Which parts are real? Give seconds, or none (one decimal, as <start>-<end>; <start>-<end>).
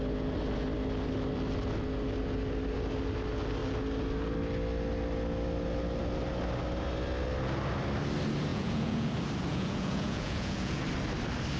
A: 0.0-8.5; 9.1-9.5; 10.8-11.6